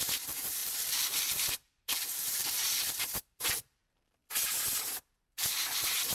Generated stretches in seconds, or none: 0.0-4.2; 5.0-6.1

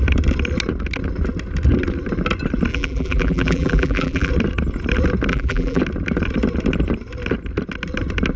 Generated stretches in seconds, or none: 2.7-4.3; 5.3-5.8

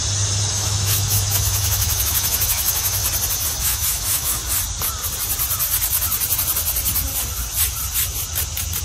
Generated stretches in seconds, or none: 0.5-3.0; 3.6-4.4